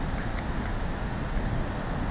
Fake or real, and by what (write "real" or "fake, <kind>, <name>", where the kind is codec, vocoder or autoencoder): real